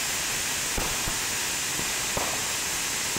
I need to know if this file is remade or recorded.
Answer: recorded